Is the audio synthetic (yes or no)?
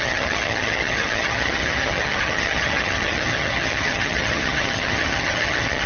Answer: yes